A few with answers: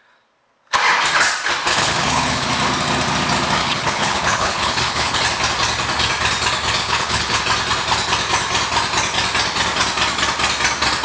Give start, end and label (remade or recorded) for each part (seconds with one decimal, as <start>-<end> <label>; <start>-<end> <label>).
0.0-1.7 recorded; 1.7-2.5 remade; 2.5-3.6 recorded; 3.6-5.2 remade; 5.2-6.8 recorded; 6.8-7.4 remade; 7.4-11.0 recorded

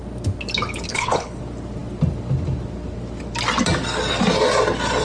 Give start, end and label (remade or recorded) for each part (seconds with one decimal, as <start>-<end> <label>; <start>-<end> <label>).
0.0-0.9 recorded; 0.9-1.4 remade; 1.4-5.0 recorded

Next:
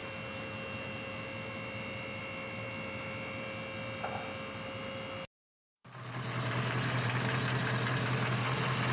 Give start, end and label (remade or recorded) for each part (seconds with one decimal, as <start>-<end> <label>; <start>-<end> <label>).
0.0-8.9 recorded